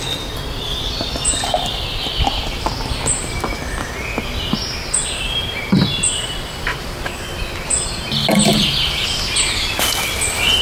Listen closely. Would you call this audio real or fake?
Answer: real